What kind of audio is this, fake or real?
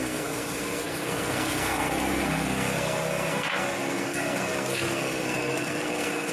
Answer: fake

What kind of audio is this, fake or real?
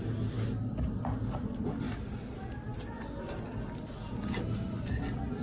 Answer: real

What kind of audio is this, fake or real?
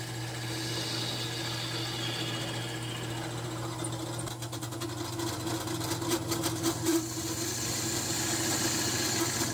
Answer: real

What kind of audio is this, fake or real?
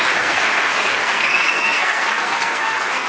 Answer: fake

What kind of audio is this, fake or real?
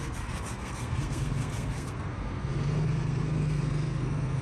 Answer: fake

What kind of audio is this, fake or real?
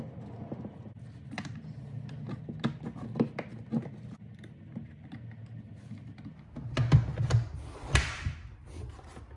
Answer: real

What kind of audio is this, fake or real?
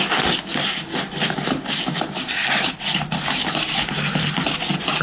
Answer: real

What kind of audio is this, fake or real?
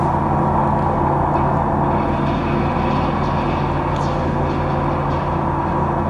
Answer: real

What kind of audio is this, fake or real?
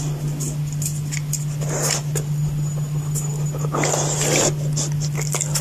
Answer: real